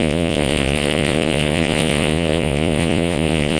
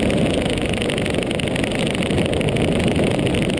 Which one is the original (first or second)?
second